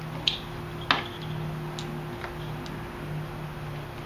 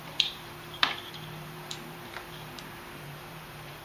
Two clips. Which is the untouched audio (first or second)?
first